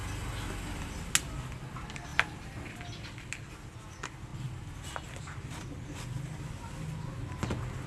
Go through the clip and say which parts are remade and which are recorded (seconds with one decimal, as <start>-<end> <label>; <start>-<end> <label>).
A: 0.0-2.1 recorded; 2.1-2.7 remade; 2.7-7.9 recorded